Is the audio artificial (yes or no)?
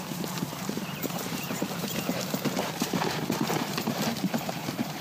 yes